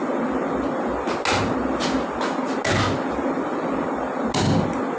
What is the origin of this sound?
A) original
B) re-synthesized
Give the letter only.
A